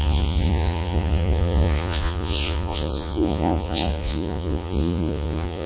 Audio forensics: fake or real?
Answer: fake